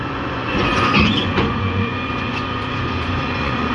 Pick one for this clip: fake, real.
fake